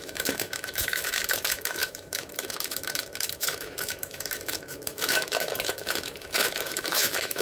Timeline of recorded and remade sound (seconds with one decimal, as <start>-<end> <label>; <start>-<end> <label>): 0.0-7.4 remade